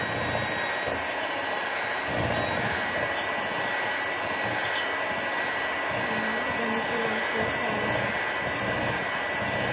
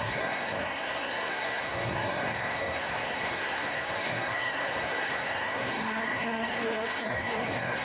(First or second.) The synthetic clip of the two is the second